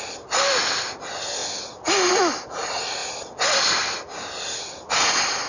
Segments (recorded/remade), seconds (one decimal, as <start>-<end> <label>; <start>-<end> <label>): 0.0-5.5 recorded